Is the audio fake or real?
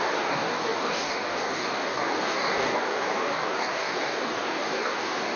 fake